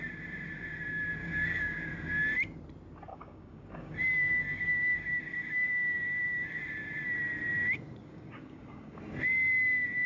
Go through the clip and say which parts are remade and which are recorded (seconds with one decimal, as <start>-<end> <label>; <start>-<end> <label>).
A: 0.0-1.2 recorded; 1.2-1.9 remade; 1.9-3.1 recorded; 3.1-6.6 remade; 6.6-8.0 recorded; 8.0-9.0 remade; 9.0-10.1 recorded